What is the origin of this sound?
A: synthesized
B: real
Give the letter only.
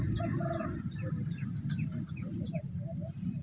B